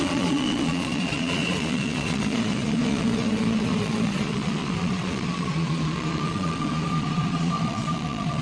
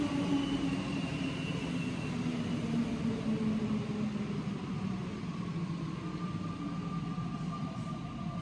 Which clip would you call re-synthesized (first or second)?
first